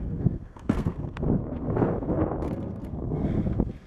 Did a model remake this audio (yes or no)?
yes